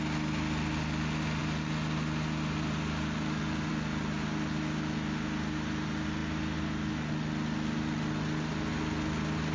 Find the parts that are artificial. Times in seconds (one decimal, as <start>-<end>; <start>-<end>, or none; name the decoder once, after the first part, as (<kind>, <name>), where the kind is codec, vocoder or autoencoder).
none